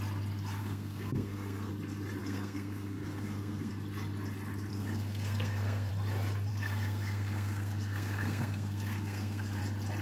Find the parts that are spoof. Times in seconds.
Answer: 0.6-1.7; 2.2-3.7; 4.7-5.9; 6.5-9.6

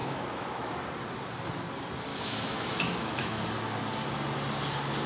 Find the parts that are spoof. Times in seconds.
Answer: 0.0-0.8; 2.1-3.4

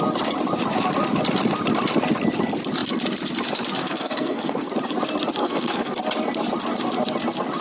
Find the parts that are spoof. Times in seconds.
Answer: 3.8-4.7; 5.4-6.0

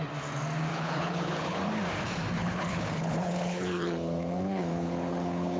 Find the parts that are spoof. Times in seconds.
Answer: 0.7-1.7; 2.4-5.6

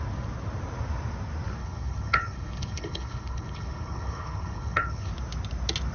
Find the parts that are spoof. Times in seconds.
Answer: 1.6-5.1

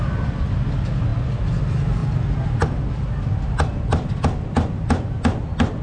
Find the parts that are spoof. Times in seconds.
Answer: none